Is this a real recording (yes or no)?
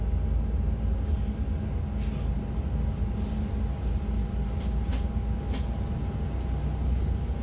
yes